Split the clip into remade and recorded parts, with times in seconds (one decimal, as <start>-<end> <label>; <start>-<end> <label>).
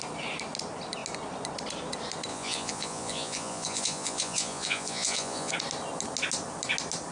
0.0-2.3 recorded; 2.3-5.5 remade; 5.5-7.1 recorded